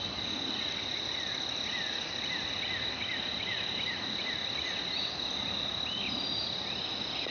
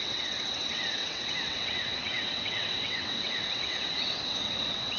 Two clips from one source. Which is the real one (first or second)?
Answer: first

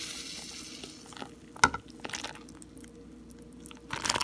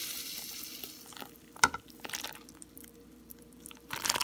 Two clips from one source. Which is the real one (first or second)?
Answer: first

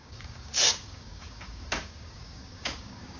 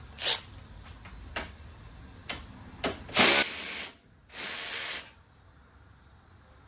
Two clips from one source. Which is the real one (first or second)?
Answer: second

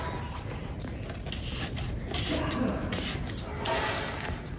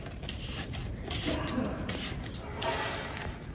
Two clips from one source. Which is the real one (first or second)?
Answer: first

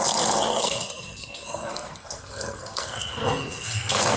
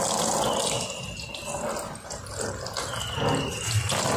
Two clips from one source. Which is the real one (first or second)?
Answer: second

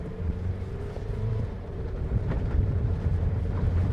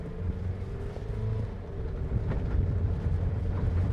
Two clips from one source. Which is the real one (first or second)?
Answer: second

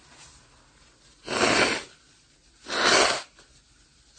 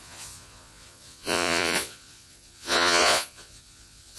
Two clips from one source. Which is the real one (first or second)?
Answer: first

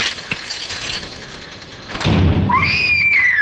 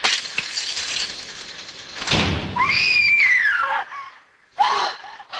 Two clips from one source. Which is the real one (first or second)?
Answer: first